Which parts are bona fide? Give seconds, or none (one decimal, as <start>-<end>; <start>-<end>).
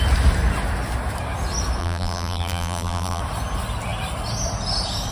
0.0-1.8; 3.2-5.1